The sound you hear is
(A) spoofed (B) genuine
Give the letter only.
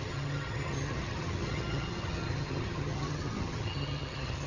A